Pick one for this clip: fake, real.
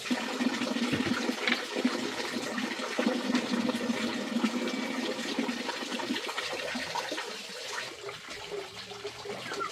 real